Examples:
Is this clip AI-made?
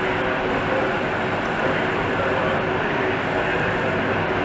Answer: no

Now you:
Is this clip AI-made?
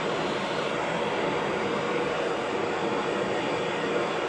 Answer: yes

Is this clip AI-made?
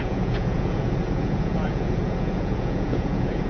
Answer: yes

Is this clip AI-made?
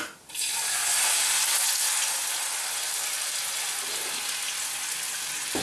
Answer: no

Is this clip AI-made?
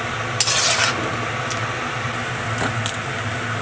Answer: no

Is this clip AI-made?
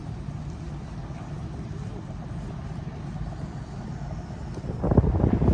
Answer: no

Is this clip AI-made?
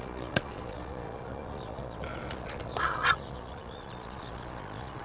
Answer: yes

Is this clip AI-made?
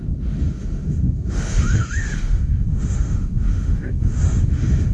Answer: yes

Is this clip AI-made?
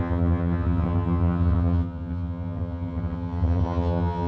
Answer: yes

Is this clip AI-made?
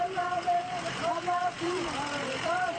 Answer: yes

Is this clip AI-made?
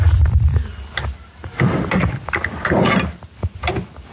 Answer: no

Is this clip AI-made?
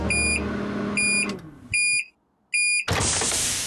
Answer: no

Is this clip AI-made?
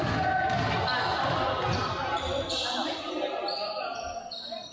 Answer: no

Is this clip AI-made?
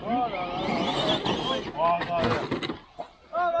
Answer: no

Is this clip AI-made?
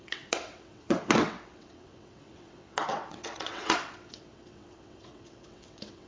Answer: yes